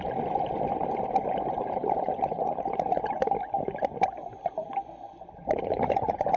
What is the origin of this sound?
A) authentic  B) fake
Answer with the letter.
B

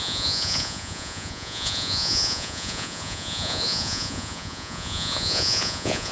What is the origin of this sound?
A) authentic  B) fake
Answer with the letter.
B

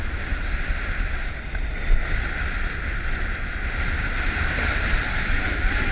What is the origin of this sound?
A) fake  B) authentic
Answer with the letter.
B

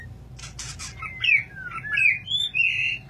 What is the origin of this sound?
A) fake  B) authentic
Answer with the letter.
B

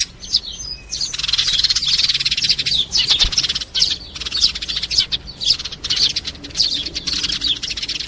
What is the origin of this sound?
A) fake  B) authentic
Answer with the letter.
B